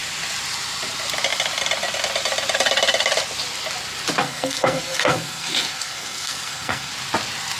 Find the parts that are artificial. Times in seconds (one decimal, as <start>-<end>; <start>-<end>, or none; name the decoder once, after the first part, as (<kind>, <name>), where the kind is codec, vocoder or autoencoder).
4.2-6.9 (codec, SNAC)